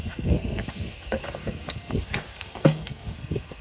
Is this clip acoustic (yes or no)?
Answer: no